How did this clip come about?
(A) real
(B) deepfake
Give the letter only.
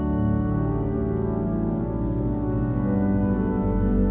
A